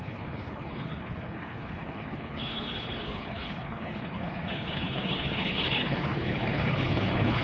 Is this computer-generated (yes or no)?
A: yes